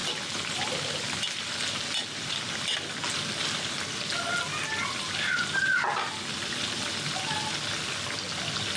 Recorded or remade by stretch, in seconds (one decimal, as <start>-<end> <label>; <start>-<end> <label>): 0.0-8.8 recorded